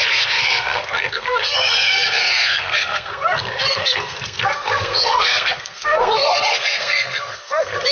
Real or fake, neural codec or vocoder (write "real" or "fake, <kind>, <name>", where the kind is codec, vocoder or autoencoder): fake, codec, SNAC